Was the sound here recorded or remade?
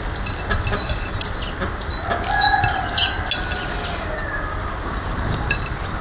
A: recorded